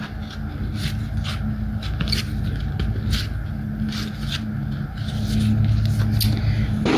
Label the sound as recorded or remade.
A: recorded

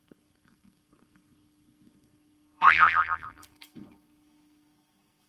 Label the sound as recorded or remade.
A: remade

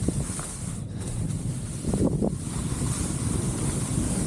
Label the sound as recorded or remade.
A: recorded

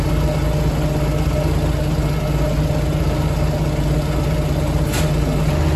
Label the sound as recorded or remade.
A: recorded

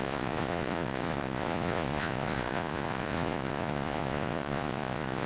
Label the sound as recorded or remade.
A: remade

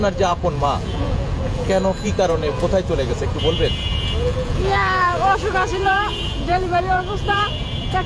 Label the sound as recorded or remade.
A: remade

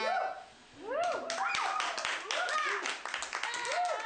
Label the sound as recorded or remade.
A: recorded